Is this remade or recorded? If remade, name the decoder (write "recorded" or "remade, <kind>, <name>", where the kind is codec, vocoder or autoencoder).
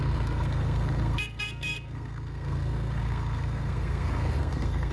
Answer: remade, codec, SNAC